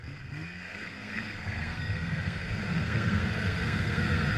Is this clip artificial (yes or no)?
yes